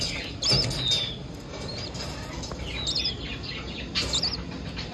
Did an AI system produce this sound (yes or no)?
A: no